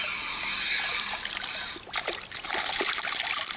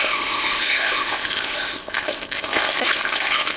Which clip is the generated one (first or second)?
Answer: second